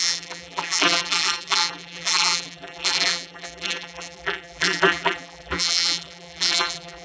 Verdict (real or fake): fake